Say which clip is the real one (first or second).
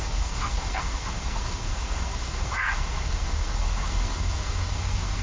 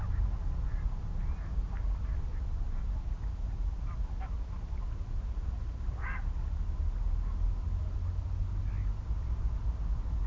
second